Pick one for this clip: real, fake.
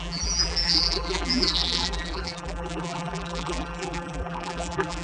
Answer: fake